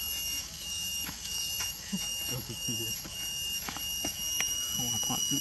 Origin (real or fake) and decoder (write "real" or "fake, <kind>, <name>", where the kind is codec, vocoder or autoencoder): fake, autoencoder, DAC-VAE